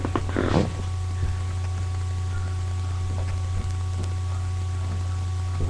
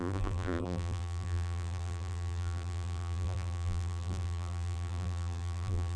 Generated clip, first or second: second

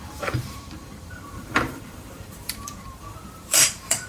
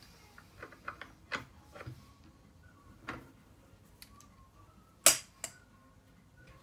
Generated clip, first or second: first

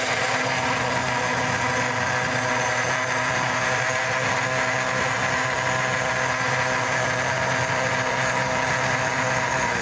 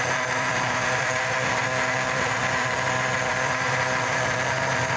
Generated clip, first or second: second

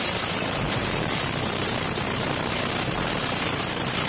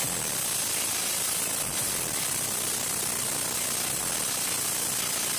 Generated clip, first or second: first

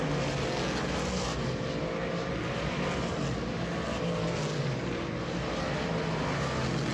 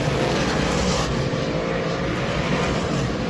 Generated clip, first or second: second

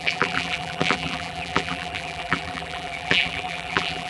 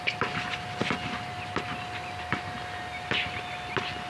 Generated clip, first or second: first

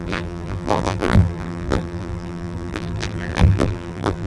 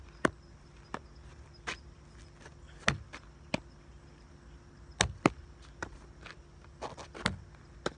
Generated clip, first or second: first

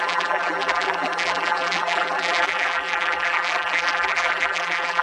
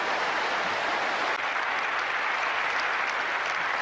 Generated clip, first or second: first